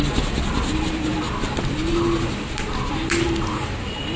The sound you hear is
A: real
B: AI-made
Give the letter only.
A